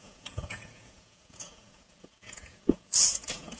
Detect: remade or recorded remade